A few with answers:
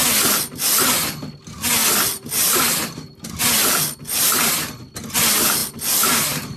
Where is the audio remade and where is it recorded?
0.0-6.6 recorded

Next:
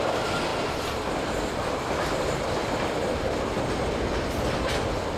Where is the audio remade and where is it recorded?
0.0-5.2 recorded

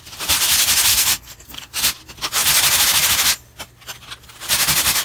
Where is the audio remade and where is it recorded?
0.0-0.9 recorded; 0.9-1.8 remade; 1.8-5.0 recorded

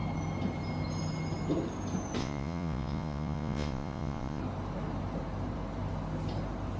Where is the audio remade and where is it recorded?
0.0-2.2 recorded; 2.2-4.4 remade; 4.4-6.8 recorded

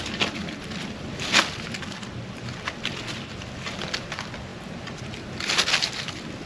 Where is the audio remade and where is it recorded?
0.0-6.5 recorded

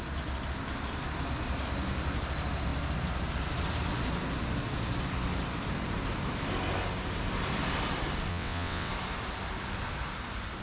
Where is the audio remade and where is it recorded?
0.0-8.3 recorded; 8.3-8.9 remade; 8.9-10.6 recorded

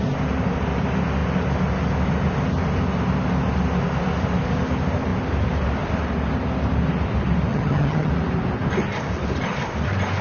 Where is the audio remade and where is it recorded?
0.0-7.5 recorded; 7.5-8.1 remade; 8.1-10.2 recorded

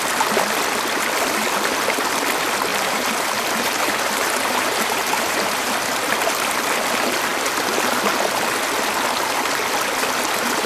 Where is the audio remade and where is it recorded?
0.0-2.7 recorded; 2.7-5.7 remade; 5.7-10.7 recorded